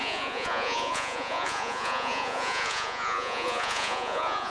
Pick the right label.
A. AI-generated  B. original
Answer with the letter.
A